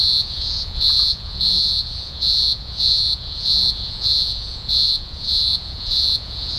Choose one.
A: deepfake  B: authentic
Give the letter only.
A